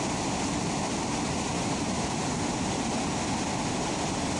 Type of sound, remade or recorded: recorded